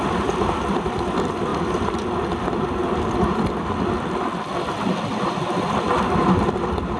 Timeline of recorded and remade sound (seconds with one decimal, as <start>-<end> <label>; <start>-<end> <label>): 0.0-7.0 recorded